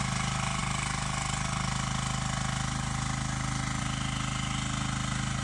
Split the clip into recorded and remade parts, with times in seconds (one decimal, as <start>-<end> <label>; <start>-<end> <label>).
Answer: 0.0-5.4 recorded